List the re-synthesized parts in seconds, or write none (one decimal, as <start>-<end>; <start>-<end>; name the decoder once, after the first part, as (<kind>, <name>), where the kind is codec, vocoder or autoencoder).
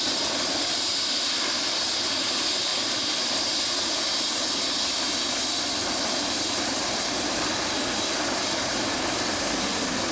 none